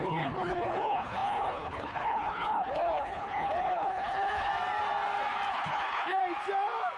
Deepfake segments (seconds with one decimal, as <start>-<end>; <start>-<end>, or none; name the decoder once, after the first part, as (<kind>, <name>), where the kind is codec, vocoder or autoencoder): 0.0-4.5 (codec, HILCodec); 5.5-6.2